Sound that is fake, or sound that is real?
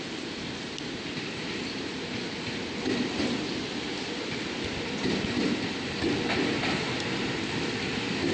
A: fake